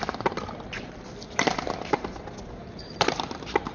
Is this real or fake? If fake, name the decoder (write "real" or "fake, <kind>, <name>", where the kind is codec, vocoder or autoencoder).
real